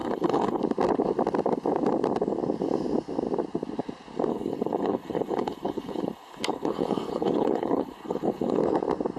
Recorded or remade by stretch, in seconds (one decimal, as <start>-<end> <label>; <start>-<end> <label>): 0.0-0.6 remade; 0.6-4.3 recorded; 4.3-8.6 remade; 8.6-9.2 recorded